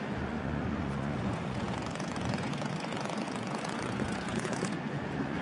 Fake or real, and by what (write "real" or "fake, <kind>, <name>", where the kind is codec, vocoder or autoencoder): fake, vocoder, Vocos